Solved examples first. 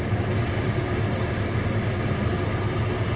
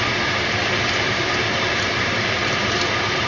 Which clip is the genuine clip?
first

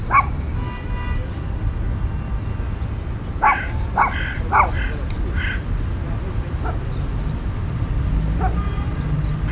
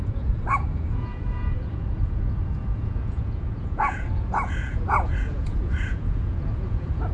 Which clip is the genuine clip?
first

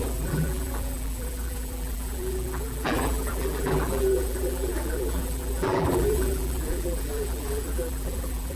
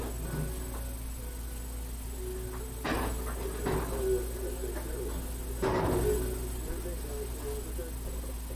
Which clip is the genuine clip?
second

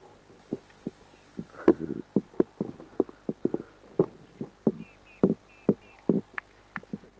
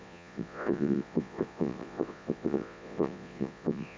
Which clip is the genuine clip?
first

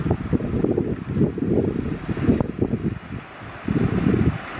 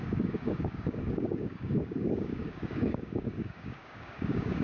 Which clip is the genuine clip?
first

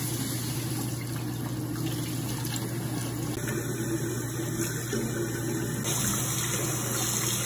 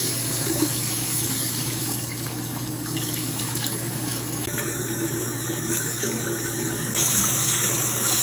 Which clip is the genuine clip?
first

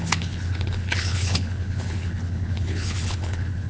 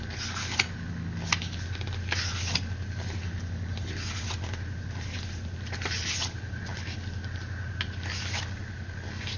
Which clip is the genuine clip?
second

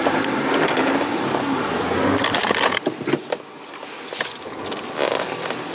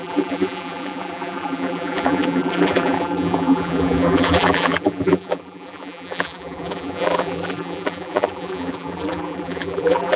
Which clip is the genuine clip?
first